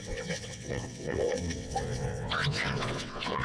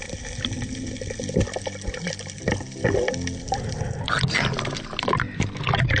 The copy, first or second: first